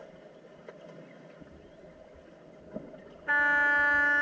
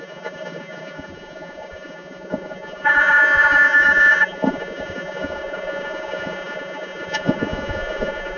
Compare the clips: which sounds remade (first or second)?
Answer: second